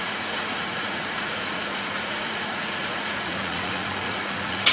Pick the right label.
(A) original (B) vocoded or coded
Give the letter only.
B